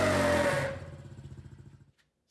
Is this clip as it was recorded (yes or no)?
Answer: yes